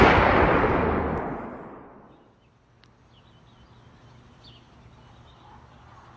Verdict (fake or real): real